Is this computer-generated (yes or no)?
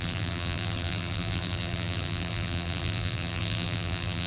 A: yes